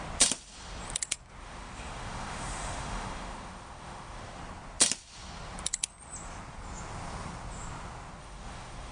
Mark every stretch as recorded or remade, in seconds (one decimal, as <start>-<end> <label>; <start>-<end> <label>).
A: 0.0-1.4 recorded; 1.4-4.4 remade; 4.4-8.2 recorded; 8.2-8.9 remade